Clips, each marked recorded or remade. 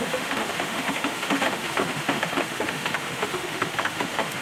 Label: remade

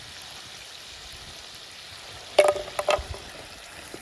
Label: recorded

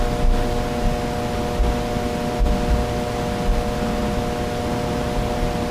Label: recorded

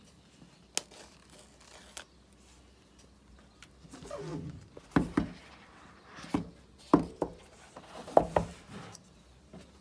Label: recorded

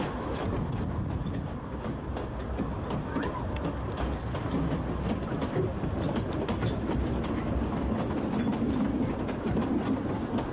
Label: recorded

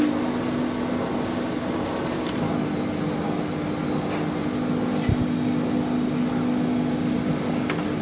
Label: recorded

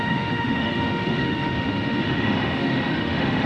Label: remade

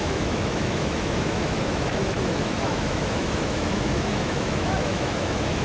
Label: remade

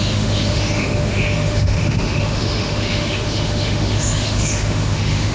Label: remade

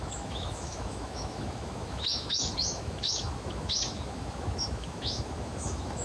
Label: remade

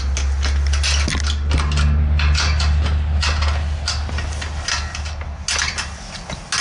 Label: recorded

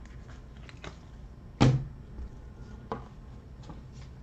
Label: recorded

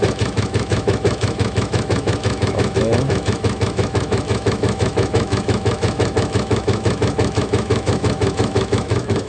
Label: remade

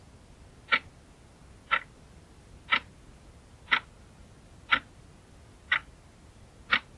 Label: recorded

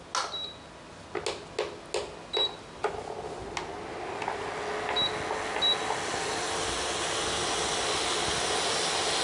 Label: recorded